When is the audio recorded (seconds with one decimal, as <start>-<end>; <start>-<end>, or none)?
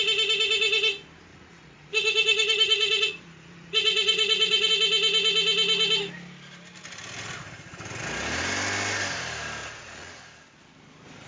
0.0-1.3; 4.7-9.6; 10.2-11.3